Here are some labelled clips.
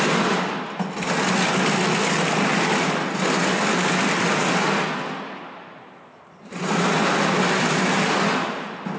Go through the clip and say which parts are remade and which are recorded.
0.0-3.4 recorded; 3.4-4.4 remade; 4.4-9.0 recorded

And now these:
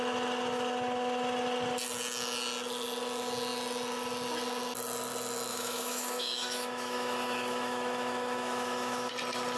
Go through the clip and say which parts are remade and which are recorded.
0.0-5.5 recorded; 5.5-9.1 remade; 9.1-9.6 recorded